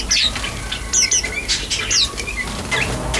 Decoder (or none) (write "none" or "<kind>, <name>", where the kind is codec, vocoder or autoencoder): none